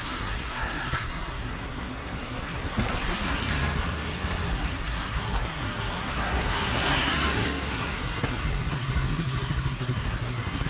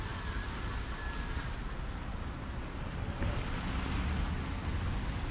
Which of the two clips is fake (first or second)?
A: first